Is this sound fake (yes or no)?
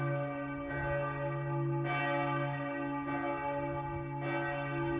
no